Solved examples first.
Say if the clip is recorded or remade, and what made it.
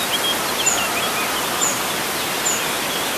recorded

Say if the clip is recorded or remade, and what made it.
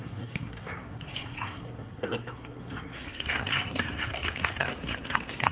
remade, codec, SNAC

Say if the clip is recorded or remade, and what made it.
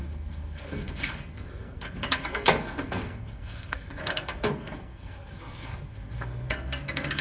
remade, codec, SNAC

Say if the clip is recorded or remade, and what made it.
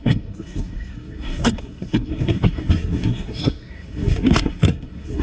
remade, codec, SNAC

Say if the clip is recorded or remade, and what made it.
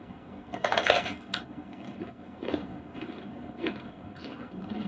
remade, codec, SNAC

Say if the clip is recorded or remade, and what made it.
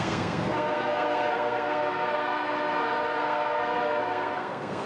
remade, codec, SNAC